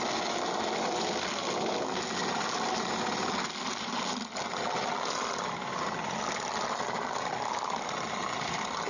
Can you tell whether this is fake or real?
real